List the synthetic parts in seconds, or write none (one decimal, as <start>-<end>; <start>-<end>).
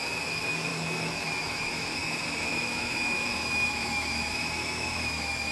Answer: 0.0-5.5